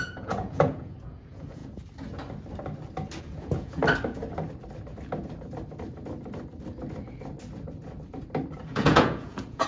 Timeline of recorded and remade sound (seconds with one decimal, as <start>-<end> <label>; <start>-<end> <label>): 0.0-1.6 remade; 1.6-3.2 recorded; 3.2-3.8 remade; 3.8-8.7 recorded; 8.7-9.7 remade